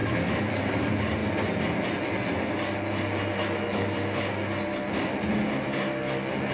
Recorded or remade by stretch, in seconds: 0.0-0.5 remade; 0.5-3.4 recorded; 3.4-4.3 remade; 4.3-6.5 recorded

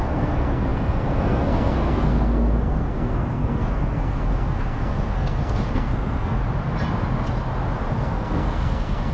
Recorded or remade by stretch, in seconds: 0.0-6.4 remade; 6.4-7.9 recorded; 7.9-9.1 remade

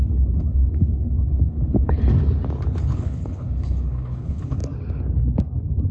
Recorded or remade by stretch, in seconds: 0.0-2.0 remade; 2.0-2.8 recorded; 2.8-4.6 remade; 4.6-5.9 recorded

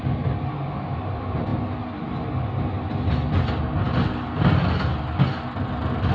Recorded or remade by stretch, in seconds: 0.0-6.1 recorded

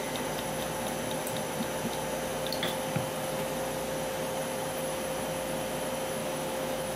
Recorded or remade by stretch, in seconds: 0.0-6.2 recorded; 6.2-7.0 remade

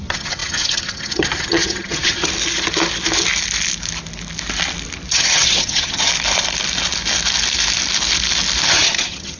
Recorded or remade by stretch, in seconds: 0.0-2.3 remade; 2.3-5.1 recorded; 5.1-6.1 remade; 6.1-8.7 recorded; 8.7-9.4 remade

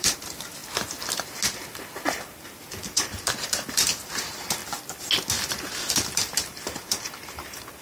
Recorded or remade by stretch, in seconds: 0.0-0.6 remade; 0.6-1.5 recorded; 1.5-4.6 remade; 4.6-5.5 recorded; 5.5-7.8 remade